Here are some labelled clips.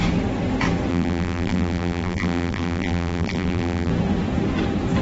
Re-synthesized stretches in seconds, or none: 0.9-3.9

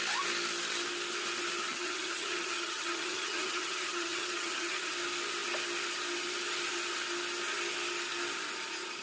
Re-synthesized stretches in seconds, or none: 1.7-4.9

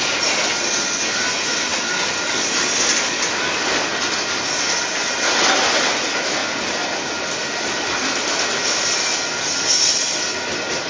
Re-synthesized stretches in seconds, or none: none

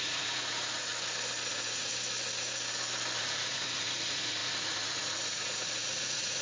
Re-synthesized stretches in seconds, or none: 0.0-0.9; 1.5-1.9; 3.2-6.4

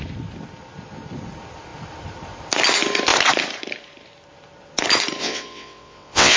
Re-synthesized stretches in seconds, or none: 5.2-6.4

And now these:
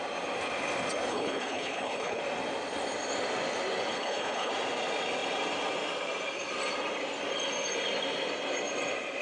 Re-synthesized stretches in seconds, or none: 1.1-2.2; 3.9-4.5

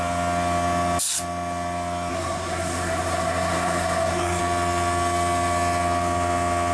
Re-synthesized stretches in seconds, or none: 2.1-4.4